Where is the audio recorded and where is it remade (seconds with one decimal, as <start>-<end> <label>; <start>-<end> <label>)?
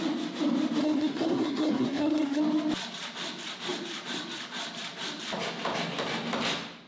0.0-0.8 recorded; 0.8-2.4 remade; 2.4-6.9 recorded